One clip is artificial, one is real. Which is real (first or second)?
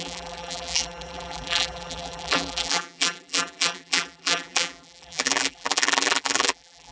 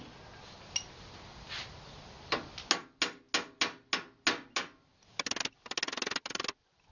second